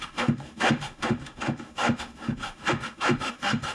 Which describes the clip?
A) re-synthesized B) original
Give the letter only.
A